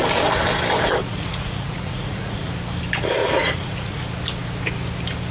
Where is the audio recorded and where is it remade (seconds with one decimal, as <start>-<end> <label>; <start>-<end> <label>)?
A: 0.0-1.0 recorded; 1.0-2.5 remade; 2.5-3.2 recorded; 3.2-4.0 remade; 4.0-5.3 recorded